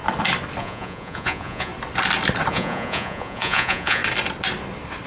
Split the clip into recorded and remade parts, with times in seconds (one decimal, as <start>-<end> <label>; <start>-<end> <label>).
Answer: 0.0-0.6 recorded; 0.6-1.7 remade; 1.7-2.5 recorded; 2.5-4.0 remade; 4.0-5.1 recorded